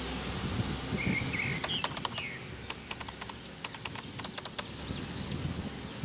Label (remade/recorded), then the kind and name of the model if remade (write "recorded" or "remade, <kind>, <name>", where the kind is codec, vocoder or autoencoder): recorded